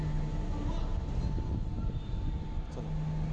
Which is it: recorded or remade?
recorded